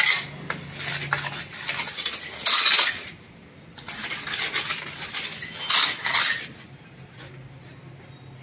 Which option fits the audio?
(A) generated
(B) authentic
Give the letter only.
B